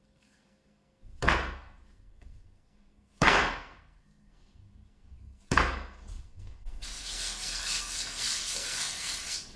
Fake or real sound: fake